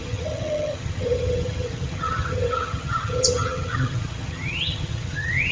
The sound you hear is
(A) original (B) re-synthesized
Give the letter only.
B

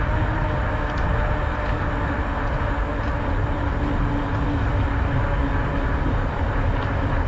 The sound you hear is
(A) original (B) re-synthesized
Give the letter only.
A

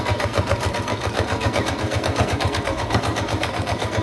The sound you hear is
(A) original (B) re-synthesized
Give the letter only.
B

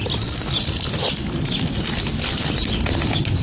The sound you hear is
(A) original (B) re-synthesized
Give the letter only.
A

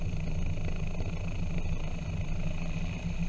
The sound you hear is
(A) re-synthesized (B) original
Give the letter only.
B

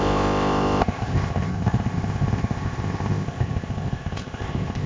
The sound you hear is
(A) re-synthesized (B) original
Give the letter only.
A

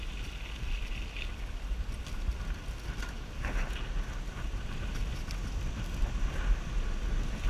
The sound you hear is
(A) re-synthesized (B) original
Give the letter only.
B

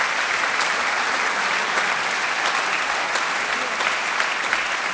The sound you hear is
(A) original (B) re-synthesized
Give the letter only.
A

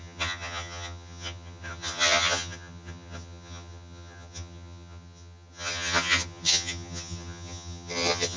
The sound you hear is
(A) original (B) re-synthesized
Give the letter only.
B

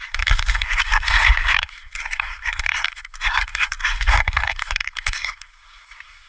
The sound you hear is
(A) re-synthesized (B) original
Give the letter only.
A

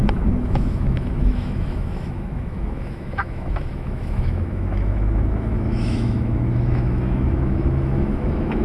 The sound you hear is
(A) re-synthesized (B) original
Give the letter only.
A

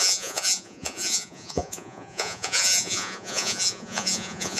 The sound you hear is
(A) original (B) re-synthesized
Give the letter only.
B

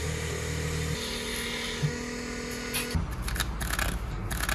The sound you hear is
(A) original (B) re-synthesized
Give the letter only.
A